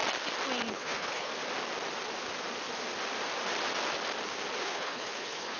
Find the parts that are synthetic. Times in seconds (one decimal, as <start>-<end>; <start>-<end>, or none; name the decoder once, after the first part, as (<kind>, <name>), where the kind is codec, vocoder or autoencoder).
0.7-1.3 (codec, HILCodec); 4.6-5.6